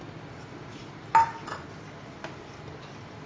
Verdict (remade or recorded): recorded